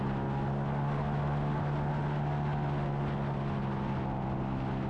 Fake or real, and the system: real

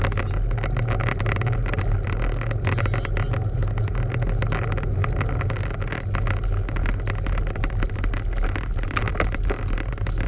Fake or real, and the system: real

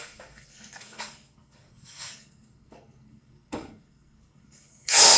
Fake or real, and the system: fake, codec, SNAC